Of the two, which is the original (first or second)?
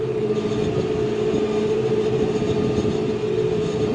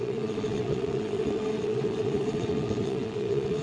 first